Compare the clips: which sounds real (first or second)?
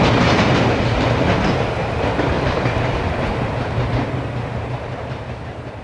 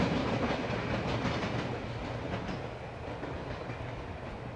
second